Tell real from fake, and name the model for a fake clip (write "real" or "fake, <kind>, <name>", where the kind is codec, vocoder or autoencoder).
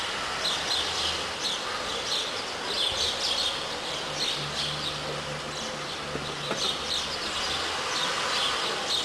real